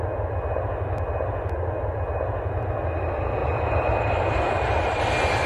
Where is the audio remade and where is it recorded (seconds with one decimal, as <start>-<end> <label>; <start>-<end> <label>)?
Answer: 0.0-3.4 recorded; 3.4-5.0 remade; 5.0-5.5 recorded